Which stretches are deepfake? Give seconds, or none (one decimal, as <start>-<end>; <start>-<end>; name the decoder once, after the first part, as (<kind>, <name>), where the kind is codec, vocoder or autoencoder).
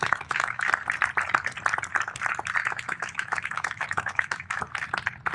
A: 0.0-0.7 (autoencoder, DAC-VAE); 2.6-4.6